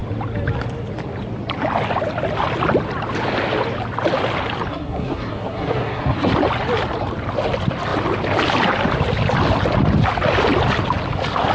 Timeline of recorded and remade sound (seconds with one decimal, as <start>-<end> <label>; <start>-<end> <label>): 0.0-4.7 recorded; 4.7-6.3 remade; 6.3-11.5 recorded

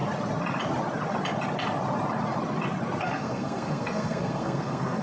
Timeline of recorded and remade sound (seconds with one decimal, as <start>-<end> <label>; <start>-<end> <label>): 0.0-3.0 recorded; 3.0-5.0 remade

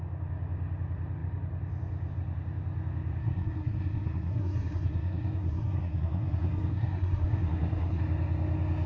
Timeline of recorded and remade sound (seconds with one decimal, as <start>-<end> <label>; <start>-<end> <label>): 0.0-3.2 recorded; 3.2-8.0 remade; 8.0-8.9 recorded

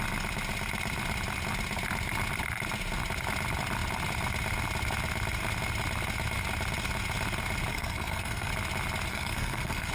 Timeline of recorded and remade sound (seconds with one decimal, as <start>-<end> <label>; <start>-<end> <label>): 0.0-7.7 recorded; 7.7-8.5 remade; 8.5-9.1 recorded; 9.1-9.9 remade

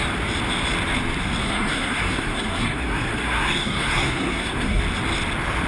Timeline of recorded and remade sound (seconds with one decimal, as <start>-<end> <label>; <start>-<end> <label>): 0.0-1.4 recorded; 1.4-4.8 remade; 4.8-5.7 recorded

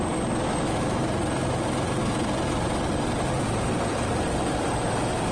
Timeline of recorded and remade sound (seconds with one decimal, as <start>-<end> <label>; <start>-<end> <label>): 0.0-5.3 recorded

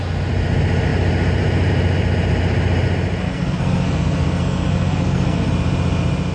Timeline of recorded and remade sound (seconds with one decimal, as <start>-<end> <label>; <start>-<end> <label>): 0.0-3.2 recorded; 3.2-5.5 remade; 5.5-6.3 recorded

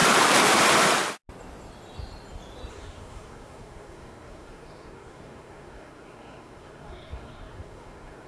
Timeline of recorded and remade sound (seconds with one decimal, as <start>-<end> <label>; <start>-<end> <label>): 0.0-2.7 recorded; 2.7-8.3 remade